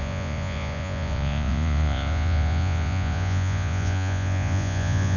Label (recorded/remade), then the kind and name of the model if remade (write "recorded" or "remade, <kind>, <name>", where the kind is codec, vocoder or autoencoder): remade, vocoder, Vocos